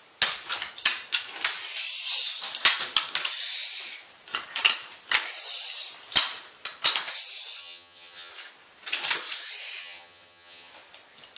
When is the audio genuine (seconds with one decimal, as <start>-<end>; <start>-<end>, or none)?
0.0-7.6; 8.3-9.8; 10.7-11.4